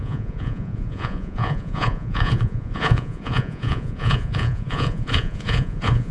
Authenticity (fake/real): fake